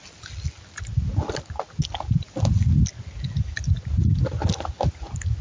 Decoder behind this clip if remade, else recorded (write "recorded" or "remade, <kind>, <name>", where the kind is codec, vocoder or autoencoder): recorded